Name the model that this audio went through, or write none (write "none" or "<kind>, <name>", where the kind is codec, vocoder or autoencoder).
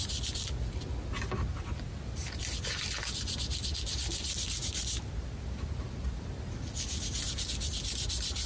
none